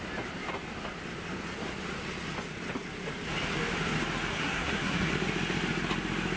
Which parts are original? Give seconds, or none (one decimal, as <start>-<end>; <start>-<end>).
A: 0.0-4.3; 5.1-6.4